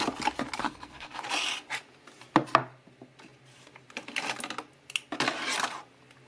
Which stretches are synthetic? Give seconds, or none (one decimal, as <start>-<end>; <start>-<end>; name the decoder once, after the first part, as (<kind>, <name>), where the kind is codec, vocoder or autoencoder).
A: 0.6-1.2 (codec, SNAC)